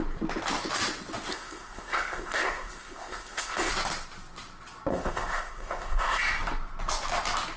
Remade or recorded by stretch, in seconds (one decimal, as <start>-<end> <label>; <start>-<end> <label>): 0.0-1.3 recorded; 1.3-3.7 remade; 3.7-4.9 recorded; 4.9-6.2 remade; 6.2-7.6 recorded